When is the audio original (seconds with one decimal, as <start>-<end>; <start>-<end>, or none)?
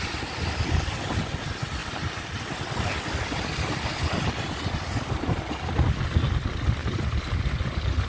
0.0-6.8; 7.4-8.1